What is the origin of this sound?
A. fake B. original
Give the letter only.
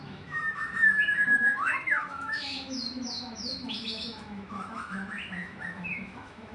A